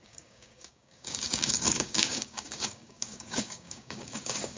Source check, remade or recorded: remade